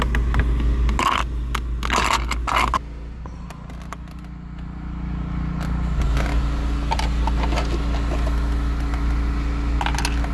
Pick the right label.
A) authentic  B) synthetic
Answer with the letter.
A